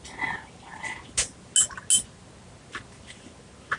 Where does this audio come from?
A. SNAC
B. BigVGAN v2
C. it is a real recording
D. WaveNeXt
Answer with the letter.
C